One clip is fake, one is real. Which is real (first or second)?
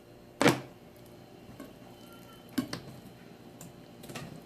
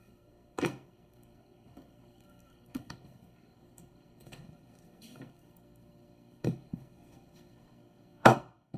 first